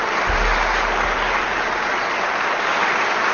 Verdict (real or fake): real